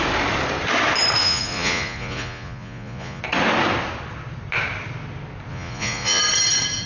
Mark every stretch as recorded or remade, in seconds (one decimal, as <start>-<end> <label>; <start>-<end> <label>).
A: 0.0-1.2 recorded; 1.2-3.2 remade; 3.2-5.5 recorded; 5.5-6.2 remade; 6.2-6.9 recorded